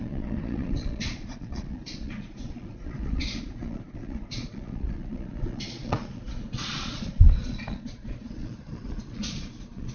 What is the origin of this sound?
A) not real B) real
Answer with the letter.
A